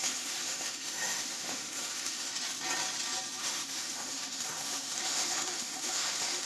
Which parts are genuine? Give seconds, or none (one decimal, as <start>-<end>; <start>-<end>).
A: 2.3-3.4